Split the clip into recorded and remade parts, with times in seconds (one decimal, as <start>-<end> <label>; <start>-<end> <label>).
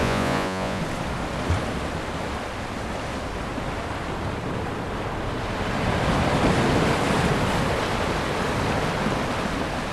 0.0-0.8 remade; 0.8-9.9 recorded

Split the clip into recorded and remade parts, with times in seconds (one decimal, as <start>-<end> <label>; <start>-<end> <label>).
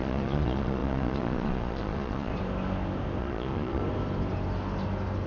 0.0-2.3 remade; 2.3-3.2 recorded; 3.2-3.8 remade; 3.8-5.3 recorded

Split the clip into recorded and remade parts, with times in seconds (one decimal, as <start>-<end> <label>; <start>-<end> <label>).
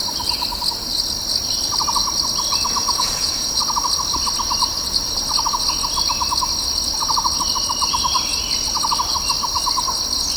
0.0-2.8 recorded; 2.8-3.6 remade; 3.6-10.4 recorded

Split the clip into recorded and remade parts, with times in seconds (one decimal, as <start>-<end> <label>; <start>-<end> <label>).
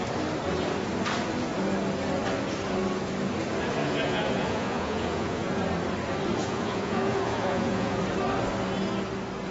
0.0-3.8 recorded; 3.8-5.5 remade; 5.5-6.4 recorded; 6.4-8.0 remade; 8.0-9.5 recorded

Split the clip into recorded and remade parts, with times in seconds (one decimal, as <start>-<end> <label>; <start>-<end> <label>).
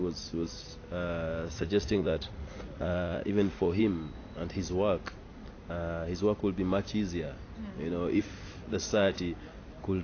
0.0-1.5 recorded; 1.5-3.8 remade; 3.8-8.6 recorded; 8.6-9.2 remade; 9.2-10.0 recorded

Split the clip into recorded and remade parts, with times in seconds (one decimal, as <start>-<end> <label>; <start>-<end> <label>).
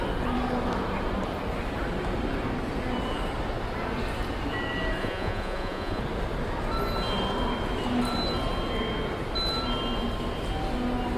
0.0-5.0 recorded; 5.0-6.0 remade; 6.0-11.2 recorded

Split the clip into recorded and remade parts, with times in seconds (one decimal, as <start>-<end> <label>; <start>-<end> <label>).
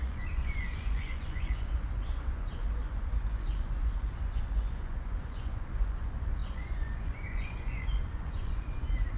0.0-9.2 remade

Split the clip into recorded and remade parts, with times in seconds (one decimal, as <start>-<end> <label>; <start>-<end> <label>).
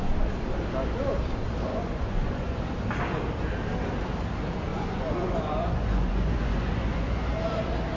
0.0-1.7 recorded; 1.7-2.6 remade; 2.6-4.7 recorded; 4.7-7.3 remade; 7.3-8.0 recorded